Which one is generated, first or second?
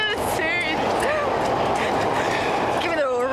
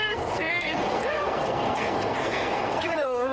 second